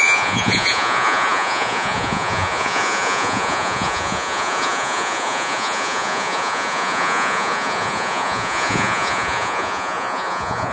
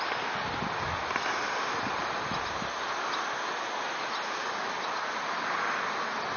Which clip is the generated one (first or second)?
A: first